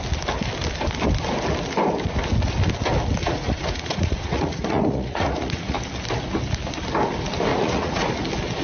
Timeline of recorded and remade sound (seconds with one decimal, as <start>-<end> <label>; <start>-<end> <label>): 0.0-3.2 recorded; 3.2-5.8 remade; 5.8-7.5 recorded; 7.5-8.1 remade; 8.1-8.6 recorded